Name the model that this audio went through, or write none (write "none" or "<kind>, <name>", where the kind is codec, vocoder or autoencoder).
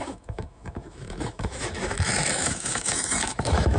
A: autoencoder, DAC-VAE